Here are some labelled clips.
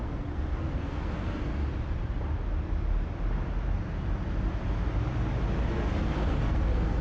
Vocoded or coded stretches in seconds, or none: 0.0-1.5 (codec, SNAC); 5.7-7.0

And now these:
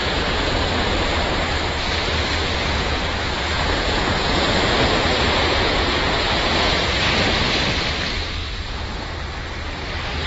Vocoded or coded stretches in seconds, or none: 0.0-1.1 (vocoder, Vocos); 2.4-7.5; 8.4-9.1

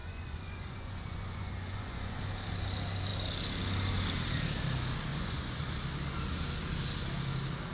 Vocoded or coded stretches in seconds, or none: 0.0-2.2 (vocoder, Vocos); 5.1-5.8

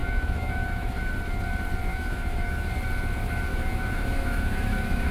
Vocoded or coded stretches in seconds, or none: 0.0-1.1 (autoencoder, DAC-VAE); 1.9-2.7; 3.5-5.1

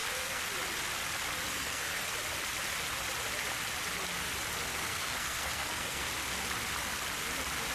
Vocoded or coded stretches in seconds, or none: 0.0-0.5 (codec, SNAC); 1.5-2.1; 4.7-6.1

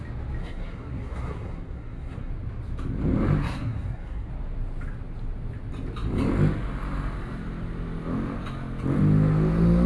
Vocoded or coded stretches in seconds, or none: 0.4-2.3 (codec, SNAC); 3.4-4.3

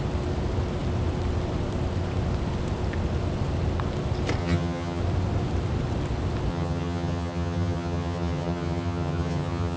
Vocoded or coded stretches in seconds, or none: 4.4-5.0 (vocoder, HiFi-GAN); 6.5-9.8

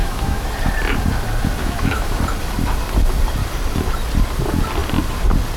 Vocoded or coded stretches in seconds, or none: 0.0-0.5 (autoencoder, DAC-VAE); 1.6-2.2